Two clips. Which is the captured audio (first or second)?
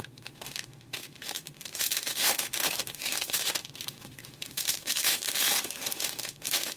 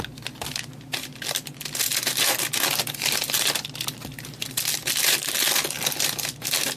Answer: second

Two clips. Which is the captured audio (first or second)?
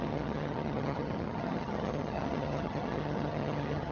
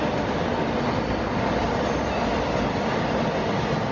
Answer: second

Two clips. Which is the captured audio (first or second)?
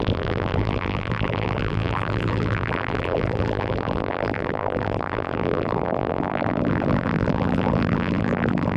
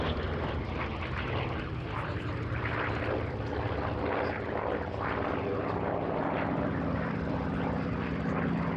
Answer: second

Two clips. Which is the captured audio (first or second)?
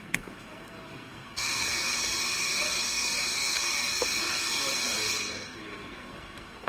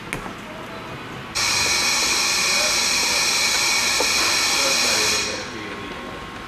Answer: second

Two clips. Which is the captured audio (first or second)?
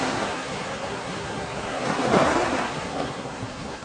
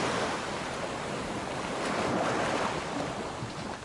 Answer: second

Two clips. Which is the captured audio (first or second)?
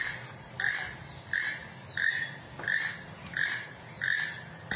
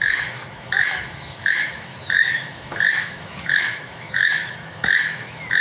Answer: first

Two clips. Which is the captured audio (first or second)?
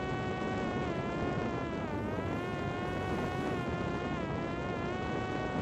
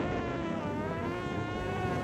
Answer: first